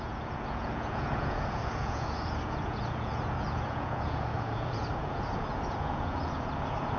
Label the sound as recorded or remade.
remade